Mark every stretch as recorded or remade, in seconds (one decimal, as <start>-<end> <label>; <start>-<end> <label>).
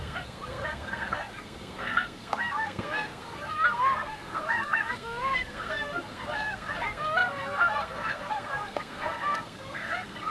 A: 0.0-10.3 remade